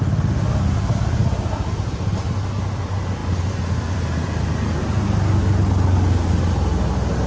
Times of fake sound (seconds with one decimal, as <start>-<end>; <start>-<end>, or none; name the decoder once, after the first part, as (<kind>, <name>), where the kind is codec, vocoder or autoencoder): none